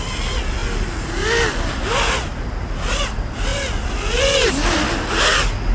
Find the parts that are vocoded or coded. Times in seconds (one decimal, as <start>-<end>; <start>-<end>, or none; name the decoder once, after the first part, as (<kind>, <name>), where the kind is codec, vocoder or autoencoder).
none

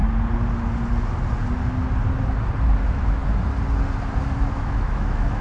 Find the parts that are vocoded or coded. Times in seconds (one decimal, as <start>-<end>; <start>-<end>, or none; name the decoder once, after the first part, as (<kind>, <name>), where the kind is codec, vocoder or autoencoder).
2.8-3.2 (autoencoder, DAC-VAE); 4.5-5.4

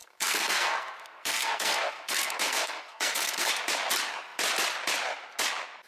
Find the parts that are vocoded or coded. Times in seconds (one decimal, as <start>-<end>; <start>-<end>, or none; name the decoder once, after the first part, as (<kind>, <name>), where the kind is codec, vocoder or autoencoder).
0.0-3.5 (codec, SNAC)

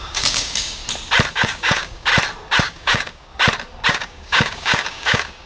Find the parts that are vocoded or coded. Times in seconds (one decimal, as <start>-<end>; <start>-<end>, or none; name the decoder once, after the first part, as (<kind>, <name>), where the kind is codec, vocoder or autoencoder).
0.0-0.8 (codec, DAC); 1.3-2.1; 2.6-3.3; 3.9-5.5

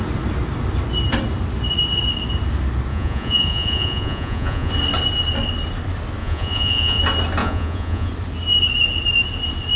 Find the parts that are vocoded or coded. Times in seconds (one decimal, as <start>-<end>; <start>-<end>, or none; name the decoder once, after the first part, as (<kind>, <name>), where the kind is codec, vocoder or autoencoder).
2.9-4.7 (vocoder, Vocos); 6.2-7.0; 7.4-8.1

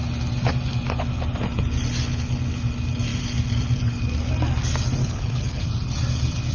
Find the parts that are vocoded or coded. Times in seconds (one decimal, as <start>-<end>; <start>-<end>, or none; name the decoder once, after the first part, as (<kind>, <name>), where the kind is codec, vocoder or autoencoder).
5.0-5.6 (codec, HILCodec)

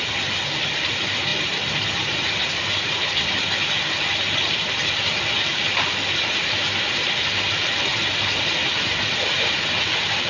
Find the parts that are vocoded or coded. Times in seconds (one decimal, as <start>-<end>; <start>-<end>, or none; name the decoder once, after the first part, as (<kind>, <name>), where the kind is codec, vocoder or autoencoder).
none

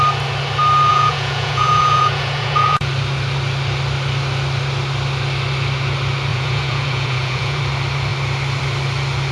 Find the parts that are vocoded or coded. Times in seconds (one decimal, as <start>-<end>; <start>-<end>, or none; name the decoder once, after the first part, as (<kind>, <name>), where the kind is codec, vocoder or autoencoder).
0.9-2.9 (vocoder, Vocos); 6.3-7.6